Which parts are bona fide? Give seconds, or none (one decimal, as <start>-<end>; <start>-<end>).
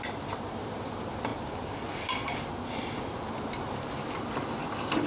0.0-5.1